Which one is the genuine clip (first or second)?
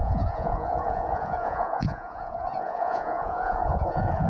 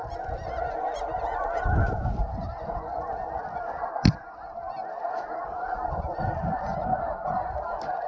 second